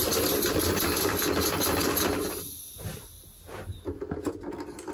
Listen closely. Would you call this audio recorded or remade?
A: recorded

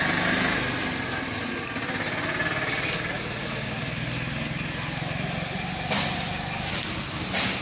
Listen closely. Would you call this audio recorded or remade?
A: recorded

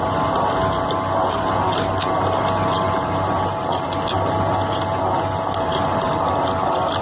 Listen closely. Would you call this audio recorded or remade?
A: recorded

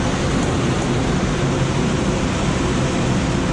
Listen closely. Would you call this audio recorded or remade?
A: recorded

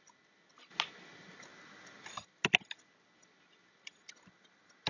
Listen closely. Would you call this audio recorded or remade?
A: recorded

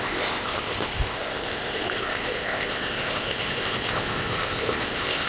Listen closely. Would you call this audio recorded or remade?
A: remade